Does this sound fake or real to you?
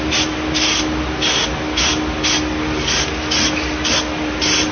real